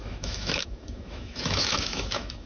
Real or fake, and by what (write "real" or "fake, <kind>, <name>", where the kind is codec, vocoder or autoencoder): fake, autoencoder, DAC-VAE